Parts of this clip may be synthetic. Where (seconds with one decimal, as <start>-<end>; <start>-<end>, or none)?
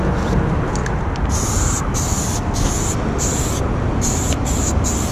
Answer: 4.4-5.1